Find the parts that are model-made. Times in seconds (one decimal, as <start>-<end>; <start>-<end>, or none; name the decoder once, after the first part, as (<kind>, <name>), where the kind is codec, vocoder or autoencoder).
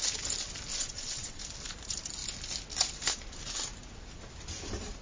0.7-1.4 (vocoder, WaveNeXt)